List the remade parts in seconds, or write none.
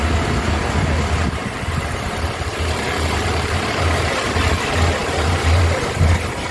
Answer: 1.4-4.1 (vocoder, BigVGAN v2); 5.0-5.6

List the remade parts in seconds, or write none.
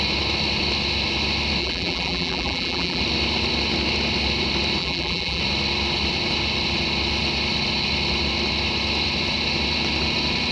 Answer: 1.6-3.0 (vocoder, BigVGAN v2); 4.8-5.4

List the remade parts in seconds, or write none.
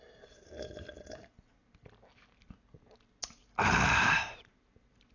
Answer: 3.4-5.1 (vocoder, BigVGAN v2)